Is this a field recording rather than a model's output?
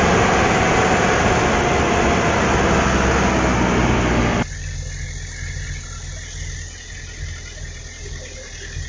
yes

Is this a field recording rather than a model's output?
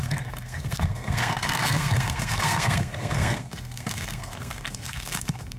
no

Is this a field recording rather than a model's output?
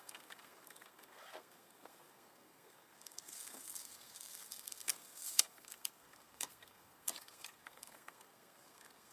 no